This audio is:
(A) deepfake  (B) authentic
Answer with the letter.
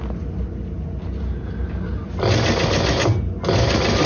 B